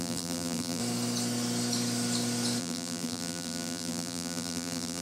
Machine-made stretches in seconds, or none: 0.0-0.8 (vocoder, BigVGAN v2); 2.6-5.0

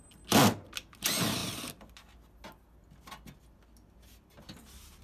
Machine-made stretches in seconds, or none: none

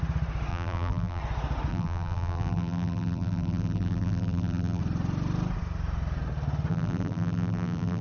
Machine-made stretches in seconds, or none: 0.5-1.2 (vocoder, BigVGAN v2); 1.7-4.8; 6.7-8.0

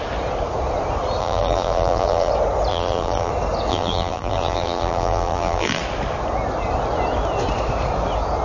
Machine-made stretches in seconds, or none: 1.2-2.3 (vocoder, BigVGAN v2); 2.7-3.3; 3.7-5.8

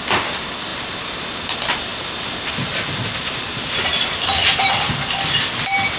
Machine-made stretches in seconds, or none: 0.7-1.3 (vocoder, BigVGAN v2); 3.9-4.7